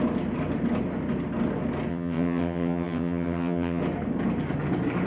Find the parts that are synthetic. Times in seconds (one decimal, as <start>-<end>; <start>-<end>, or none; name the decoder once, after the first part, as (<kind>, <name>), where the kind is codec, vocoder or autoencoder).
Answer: 1.9-3.8 (vocoder, HiFi-GAN)